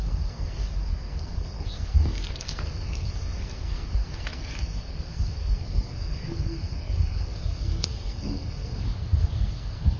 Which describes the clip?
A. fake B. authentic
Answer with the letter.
A